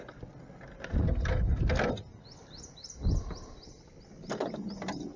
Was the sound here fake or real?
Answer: real